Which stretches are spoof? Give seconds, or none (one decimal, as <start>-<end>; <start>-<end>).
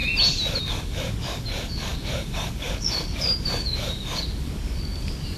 0.6-5.4